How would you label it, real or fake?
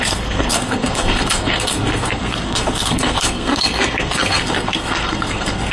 fake